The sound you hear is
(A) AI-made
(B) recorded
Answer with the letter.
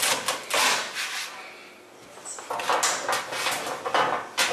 B